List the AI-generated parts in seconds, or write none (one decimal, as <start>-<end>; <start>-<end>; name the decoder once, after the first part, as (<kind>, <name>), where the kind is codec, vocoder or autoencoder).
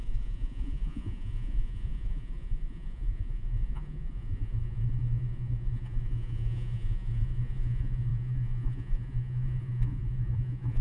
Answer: 0.0-10.8 (vocoder, Vocos)